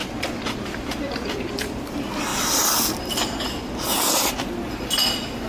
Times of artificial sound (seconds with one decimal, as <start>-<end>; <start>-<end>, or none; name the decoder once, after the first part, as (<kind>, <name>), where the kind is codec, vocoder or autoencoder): 0.0-1.8 (vocoder, BigVGAN v2); 2.3-4.3